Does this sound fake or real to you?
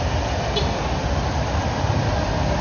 real